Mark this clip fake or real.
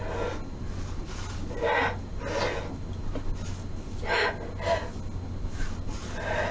real